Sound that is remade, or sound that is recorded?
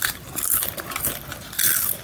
recorded